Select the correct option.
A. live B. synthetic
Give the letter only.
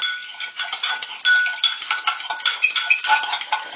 A